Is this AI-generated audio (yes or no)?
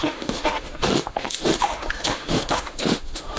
yes